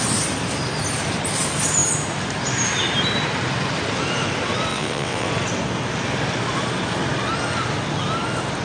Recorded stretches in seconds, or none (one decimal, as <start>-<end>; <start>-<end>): 0.0-4.7; 5.3-8.6